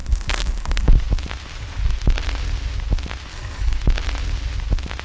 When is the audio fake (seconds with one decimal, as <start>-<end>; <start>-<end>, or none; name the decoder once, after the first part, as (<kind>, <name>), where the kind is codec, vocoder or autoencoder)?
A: 0.0-0.8 (codec, SNAC); 3.3-3.8